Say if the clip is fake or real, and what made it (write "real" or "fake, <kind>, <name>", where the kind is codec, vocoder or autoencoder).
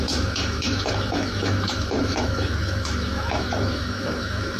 fake, autoencoder, DAC-VAE